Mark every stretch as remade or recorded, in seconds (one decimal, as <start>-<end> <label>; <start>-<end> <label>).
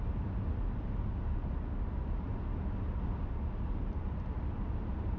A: 0.0-5.2 recorded